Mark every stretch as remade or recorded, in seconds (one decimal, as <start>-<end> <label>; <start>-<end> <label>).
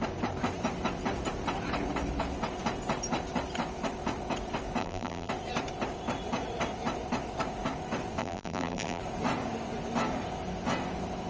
0.0-4.8 recorded; 4.8-5.3 remade; 5.3-8.2 recorded; 8.2-9.0 remade; 9.0-11.3 recorded